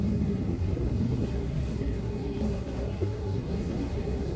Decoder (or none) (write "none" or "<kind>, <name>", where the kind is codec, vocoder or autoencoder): codec, SNAC